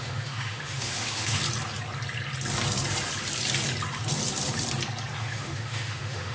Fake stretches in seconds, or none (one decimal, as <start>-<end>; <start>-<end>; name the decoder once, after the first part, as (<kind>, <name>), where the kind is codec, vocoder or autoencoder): 0.0-1.4 (autoencoder, DAC-VAE); 5.2-6.3